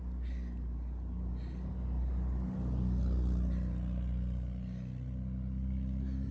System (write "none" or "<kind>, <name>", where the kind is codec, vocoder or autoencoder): none